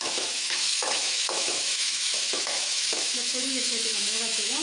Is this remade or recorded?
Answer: remade